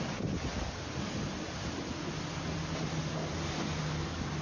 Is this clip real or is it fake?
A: real